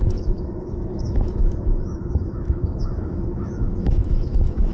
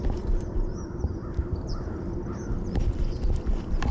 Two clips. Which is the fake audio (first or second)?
first